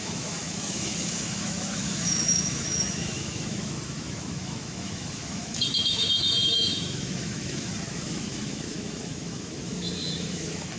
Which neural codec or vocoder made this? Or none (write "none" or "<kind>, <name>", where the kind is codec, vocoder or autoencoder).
autoencoder, DAC-VAE